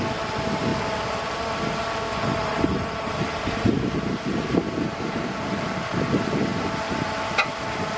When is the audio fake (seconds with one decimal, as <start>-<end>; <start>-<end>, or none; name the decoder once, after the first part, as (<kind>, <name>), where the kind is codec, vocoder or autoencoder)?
none